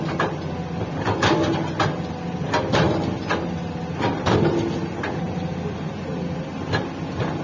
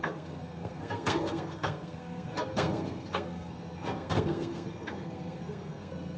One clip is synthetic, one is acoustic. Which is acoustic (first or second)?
first